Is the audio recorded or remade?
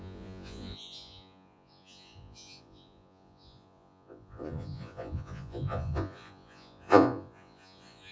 remade